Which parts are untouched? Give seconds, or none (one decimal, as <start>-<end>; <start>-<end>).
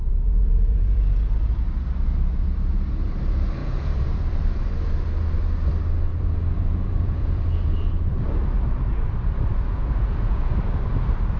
1.3-3.6; 4.3-6.1; 8.0-9.5; 10.5-11.4